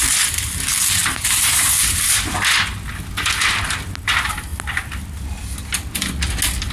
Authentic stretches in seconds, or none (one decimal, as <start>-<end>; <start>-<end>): 0.0-1.0; 2.3-6.7